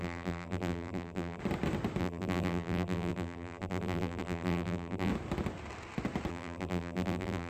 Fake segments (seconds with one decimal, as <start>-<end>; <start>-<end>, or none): 0.0-1.4; 2.0-5.1; 6.3-7.5